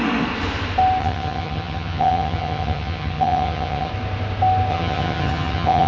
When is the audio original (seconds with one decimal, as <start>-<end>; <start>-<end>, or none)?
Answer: 0.0-1.0; 3.9-4.7